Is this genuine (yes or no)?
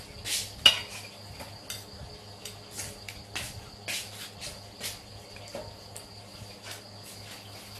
yes